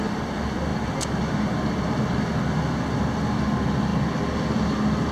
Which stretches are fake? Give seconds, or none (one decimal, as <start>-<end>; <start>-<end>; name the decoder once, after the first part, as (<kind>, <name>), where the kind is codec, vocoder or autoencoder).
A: none